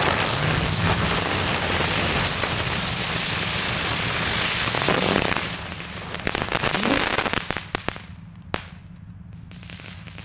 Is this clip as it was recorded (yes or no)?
yes